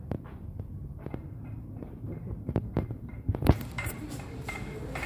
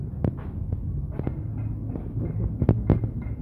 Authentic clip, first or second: second